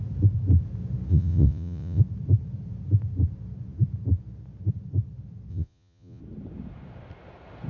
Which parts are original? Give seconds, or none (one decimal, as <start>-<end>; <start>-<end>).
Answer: 0.0-1.1; 2.0-5.5; 6.2-7.7

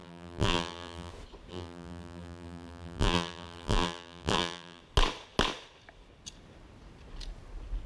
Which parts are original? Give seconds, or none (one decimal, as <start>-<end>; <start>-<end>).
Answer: 1.1-1.5; 4.8-7.9

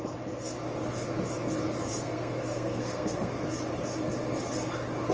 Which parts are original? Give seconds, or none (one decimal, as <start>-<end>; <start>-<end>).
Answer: 0.0-1.9; 3.3-5.1

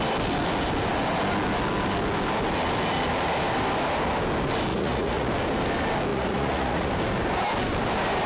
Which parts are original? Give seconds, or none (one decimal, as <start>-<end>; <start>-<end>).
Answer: 0.0-4.7; 5.3-6.1; 6.9-8.3

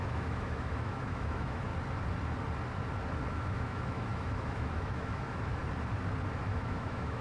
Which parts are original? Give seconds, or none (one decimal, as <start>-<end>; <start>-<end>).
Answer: 1.7-3.3; 5.6-6.4

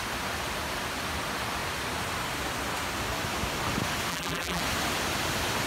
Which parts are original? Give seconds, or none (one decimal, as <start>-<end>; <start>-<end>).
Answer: 0.0-4.1; 4.6-5.7

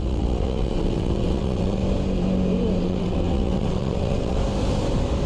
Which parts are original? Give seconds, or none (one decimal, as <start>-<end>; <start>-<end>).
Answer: 1.8-2.8; 4.4-5.3

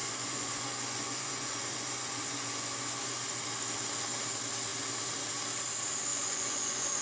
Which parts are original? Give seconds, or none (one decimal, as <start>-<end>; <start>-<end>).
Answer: 3.2-6.1